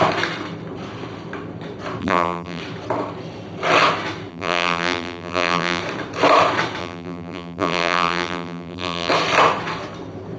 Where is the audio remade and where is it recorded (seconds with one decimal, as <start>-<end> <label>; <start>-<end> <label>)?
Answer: 0.0-2.0 recorded; 2.0-2.6 remade; 2.6-4.3 recorded; 4.3-5.8 remade; 5.8-6.8 recorded; 6.8-9.1 remade; 9.1-10.4 recorded